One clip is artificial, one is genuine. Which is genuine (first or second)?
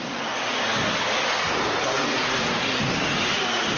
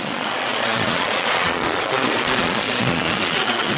first